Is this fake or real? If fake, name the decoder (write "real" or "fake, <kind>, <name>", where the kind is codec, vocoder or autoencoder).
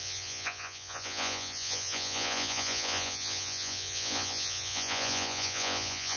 fake, vocoder, Vocos